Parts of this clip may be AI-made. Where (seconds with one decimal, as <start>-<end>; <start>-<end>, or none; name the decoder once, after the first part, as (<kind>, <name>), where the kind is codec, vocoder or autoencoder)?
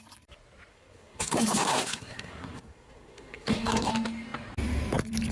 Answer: 0.7-3.9 (codec, SNAC)